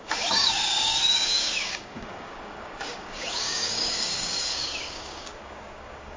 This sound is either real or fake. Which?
fake